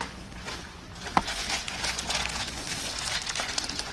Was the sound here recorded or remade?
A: remade